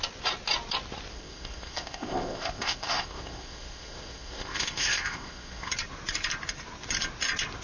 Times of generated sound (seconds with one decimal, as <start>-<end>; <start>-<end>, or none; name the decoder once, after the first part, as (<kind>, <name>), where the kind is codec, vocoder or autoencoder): 1.1-5.7 (codec, ZipCodec)